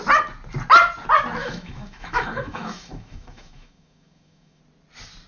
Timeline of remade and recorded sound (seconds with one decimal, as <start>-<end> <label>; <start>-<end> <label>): 0.0-1.4 recorded; 1.4-4.6 remade; 4.6-5.3 recorded